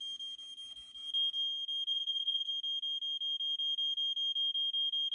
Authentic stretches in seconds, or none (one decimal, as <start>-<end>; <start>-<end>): 0.0-1.9; 2.5-5.1